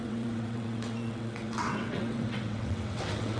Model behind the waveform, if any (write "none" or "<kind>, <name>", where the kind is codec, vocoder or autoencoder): vocoder, WaveNeXt